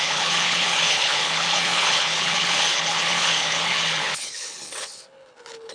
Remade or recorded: remade